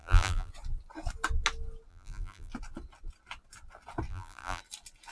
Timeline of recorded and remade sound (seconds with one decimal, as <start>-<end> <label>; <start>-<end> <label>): 0.0-0.5 remade; 0.5-1.9 recorded; 1.9-2.5 remade; 2.5-4.1 recorded; 4.1-4.6 remade; 4.6-5.1 recorded